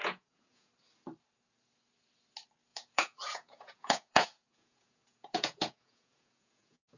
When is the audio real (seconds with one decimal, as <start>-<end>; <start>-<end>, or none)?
0.7-2.7